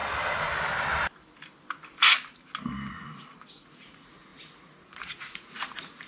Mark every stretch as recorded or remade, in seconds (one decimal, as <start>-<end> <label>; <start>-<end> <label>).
0.0-2.9 recorded; 2.9-6.1 remade